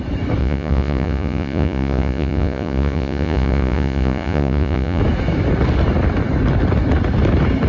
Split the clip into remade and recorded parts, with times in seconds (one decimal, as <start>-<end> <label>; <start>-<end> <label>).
0.0-0.4 recorded; 0.4-5.0 remade; 5.0-7.7 recorded